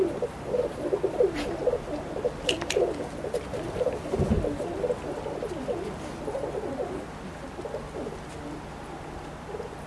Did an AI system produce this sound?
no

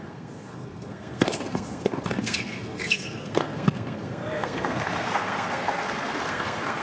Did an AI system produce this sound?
yes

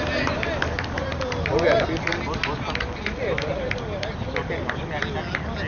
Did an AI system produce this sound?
no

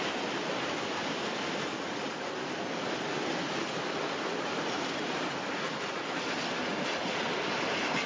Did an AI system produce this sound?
no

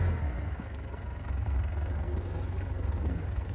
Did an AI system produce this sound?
yes